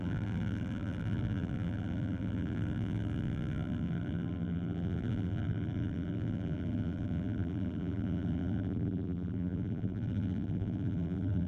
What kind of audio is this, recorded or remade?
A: remade